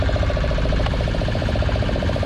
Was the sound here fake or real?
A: fake